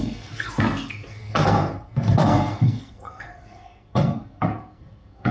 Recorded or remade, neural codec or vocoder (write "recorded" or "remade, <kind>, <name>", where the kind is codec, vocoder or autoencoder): remade, codec, SNAC